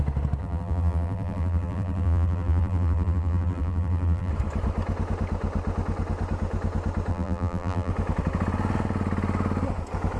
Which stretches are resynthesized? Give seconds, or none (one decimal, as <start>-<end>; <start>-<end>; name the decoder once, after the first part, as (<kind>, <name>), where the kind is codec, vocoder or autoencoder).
0.4-4.3 (vocoder, BigVGAN v2); 7.1-7.9